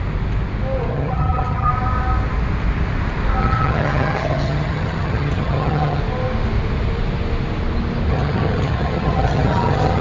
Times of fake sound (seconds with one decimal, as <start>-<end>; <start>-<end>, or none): 0.9-1.7; 3.4-6.0; 8.1-10.0